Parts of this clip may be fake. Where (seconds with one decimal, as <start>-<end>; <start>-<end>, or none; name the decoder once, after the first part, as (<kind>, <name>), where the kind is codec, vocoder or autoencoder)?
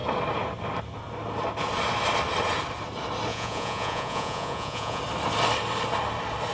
3.3-5.0 (vocoder, Vocos)